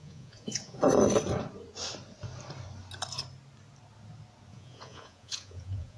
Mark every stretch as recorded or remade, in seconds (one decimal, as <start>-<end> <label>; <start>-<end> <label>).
0.0-0.8 remade; 0.8-4.5 recorded; 4.5-6.0 remade